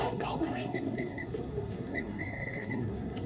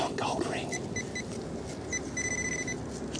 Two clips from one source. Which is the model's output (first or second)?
first